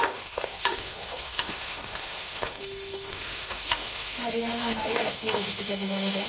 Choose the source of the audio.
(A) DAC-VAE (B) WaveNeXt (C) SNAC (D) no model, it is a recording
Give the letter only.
A